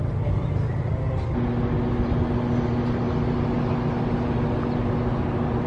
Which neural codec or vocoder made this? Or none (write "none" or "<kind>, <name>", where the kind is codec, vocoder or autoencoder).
none